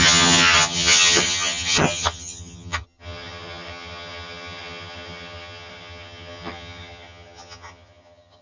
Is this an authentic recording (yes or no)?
no